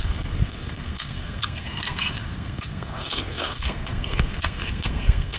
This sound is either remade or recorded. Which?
remade